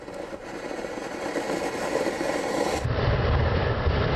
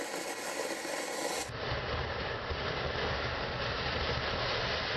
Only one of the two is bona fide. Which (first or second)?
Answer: second